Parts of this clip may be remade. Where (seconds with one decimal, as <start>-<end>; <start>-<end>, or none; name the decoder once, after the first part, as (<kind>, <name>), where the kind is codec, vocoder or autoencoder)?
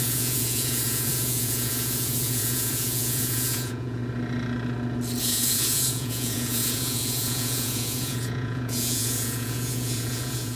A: 0.0-4.0 (vocoder, Vocos); 5.2-10.6